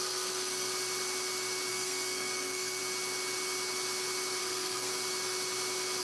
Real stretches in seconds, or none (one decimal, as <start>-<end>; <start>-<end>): 0.7-1.7; 2.8-4.4; 4.9-6.0